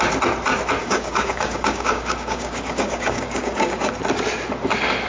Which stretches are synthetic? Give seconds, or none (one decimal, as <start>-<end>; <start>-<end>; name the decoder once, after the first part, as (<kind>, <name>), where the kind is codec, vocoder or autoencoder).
0.8-3.9 (codec, DAC)